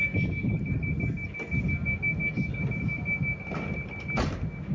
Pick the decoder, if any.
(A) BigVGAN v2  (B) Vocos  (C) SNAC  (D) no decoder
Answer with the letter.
D